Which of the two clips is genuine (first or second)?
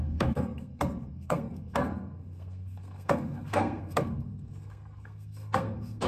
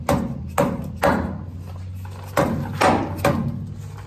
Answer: second